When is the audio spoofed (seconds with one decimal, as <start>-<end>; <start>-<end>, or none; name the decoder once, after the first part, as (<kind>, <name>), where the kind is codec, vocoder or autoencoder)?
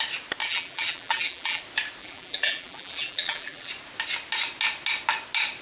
0.4-1.6 (vocoder, BigVGAN v2); 2.0-3.7